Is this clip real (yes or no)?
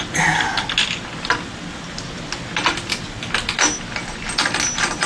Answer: yes